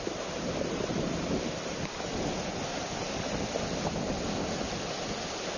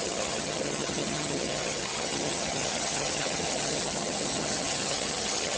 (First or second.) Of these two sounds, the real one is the first